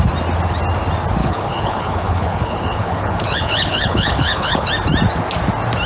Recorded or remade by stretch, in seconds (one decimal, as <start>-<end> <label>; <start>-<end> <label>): 0.0-1.2 recorded; 1.2-4.7 remade; 4.7-5.9 recorded